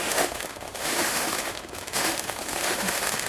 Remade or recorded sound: remade